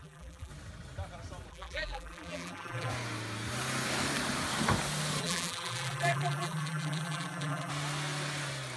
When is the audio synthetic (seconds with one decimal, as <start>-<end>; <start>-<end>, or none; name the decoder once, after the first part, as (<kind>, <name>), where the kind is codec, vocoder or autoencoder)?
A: 0.0-0.5 (vocoder, BigVGAN v2); 1.5-2.9; 5.2-7.7